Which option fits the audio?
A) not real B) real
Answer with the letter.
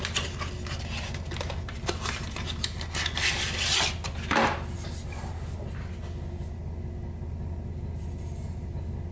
B